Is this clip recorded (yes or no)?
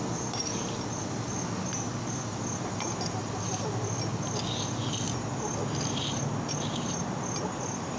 yes